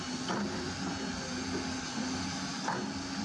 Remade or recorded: recorded